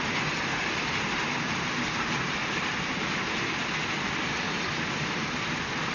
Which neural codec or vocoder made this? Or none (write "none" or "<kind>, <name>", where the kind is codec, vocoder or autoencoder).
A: none